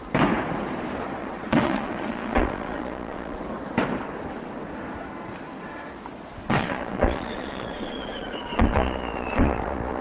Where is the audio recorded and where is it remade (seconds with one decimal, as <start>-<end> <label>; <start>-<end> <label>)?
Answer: 0.0-1.2 recorded; 1.2-3.4 remade; 3.4-6.4 recorded; 6.4-10.0 remade